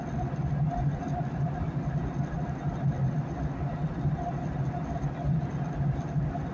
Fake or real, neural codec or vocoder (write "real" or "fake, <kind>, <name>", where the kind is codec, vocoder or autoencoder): real